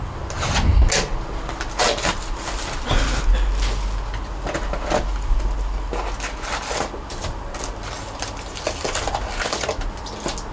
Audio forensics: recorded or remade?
recorded